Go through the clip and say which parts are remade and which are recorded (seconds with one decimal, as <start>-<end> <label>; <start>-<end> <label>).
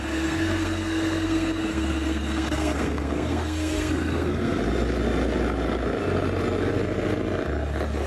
0.0-4.6 remade; 4.6-8.1 recorded